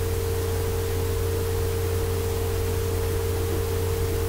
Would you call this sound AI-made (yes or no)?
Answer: no